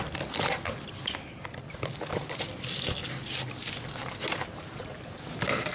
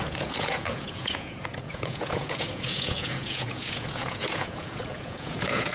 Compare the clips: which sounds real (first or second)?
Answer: first